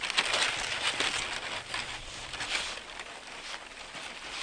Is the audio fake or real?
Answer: real